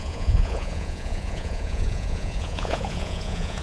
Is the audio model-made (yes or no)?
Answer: yes